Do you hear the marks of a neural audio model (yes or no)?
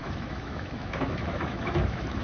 yes